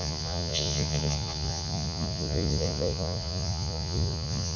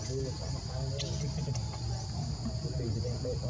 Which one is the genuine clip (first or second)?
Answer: second